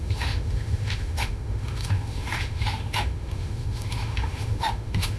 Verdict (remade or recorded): remade